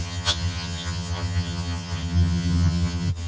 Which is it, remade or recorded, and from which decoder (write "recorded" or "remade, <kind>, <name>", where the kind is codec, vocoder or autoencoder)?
remade, vocoder, HiFi-GAN